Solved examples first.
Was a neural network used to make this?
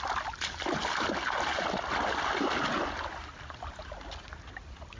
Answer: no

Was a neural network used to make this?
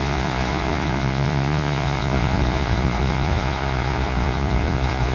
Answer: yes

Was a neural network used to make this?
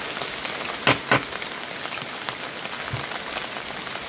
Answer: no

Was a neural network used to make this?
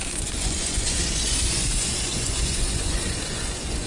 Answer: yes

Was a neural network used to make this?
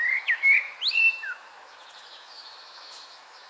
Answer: yes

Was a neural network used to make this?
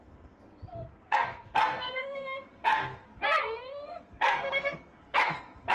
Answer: yes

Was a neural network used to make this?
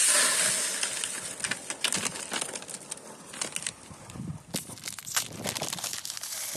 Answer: no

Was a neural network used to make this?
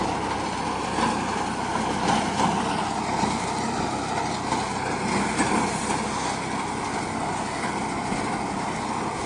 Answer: no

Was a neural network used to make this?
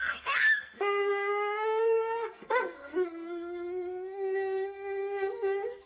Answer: yes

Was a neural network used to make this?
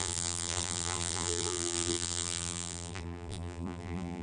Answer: yes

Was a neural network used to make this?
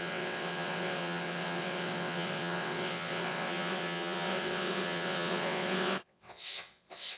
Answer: yes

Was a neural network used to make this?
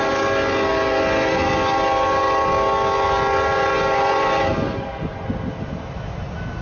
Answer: no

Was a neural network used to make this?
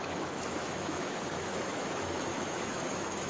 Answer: yes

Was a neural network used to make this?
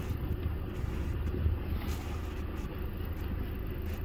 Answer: no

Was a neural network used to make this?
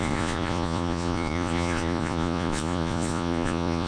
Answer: yes